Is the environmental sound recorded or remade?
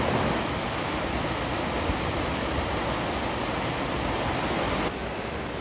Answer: recorded